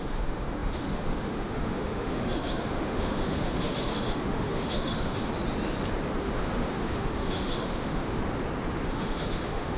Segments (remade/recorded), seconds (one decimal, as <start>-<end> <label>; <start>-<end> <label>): 0.0-5.3 remade; 5.3-6.2 recorded; 6.2-8.2 remade; 8.2-8.9 recorded; 8.9-9.8 remade